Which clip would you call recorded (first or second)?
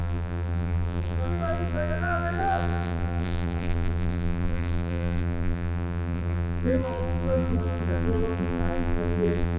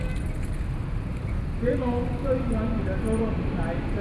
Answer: second